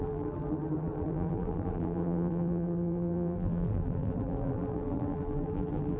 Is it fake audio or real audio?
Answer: fake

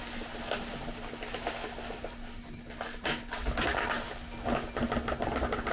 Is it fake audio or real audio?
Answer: real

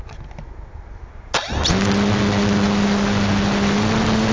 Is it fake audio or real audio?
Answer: real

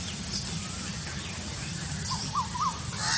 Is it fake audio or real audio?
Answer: real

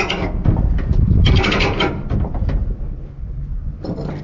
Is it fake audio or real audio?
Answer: real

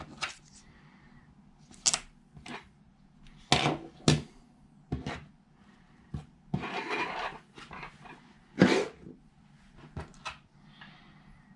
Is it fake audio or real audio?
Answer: real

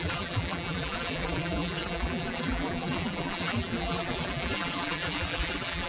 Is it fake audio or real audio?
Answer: fake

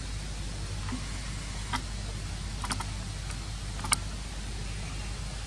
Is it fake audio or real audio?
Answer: real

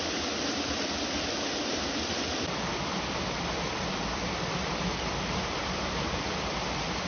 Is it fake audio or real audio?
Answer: fake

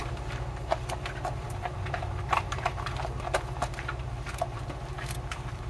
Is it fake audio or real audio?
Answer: fake